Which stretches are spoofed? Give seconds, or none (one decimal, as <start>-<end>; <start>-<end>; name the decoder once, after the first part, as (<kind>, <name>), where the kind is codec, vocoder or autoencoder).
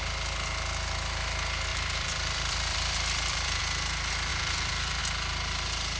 1.7-3.6 (vocoder, BigVGAN v2); 4.3-5.0